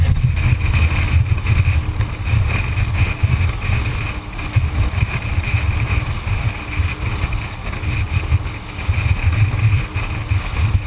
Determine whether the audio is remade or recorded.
recorded